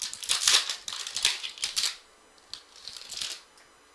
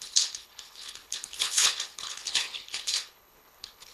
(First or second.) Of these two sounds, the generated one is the second